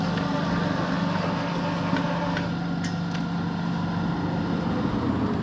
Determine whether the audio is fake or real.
real